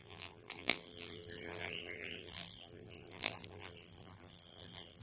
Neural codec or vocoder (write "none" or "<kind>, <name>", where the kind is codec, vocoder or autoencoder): vocoder, BigVGAN v2